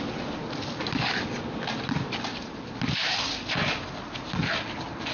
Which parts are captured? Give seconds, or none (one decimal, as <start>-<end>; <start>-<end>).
0.0-5.1